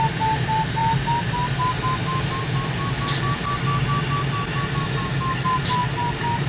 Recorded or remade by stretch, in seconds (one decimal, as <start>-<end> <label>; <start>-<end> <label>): 0.0-6.5 recorded